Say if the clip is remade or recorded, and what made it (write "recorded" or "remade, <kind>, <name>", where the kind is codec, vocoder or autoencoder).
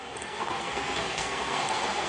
remade, codec, SNAC